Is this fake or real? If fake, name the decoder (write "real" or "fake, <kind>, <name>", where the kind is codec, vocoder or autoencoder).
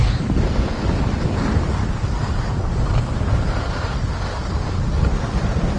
real